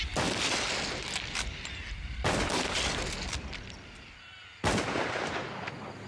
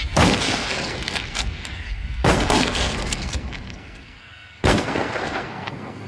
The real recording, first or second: first